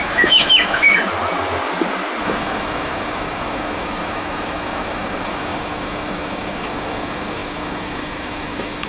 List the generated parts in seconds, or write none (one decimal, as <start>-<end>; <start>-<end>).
0.0-0.9; 2.2-8.9